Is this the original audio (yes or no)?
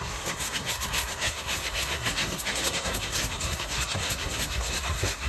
no